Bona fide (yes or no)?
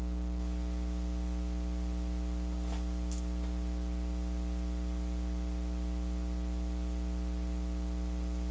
yes